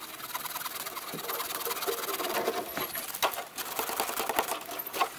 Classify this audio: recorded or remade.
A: recorded